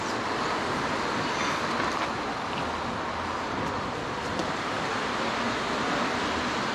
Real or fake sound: real